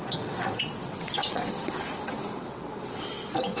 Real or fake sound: fake